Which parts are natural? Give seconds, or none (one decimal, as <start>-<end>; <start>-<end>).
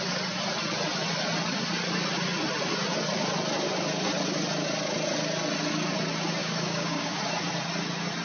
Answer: 0.0-6.4; 7.2-8.2